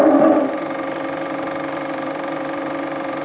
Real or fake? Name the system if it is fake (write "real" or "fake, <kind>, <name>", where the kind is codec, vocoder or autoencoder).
fake, vocoder, BigVGAN v2